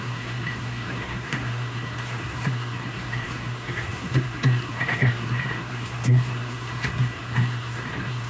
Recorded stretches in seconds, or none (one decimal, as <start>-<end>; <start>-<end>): none